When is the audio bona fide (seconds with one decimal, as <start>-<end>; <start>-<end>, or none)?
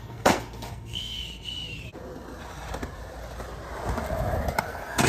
1.5-4.6